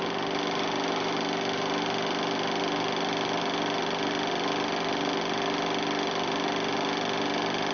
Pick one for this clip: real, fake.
real